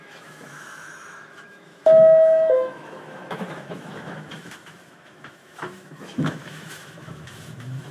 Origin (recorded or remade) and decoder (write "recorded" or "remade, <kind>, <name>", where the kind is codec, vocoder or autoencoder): remade, autoencoder, DAC-VAE